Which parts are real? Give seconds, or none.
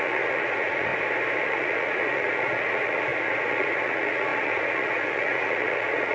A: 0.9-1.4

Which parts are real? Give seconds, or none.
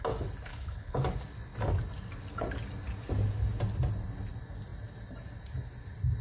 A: 0.0-0.5; 1.0-6.2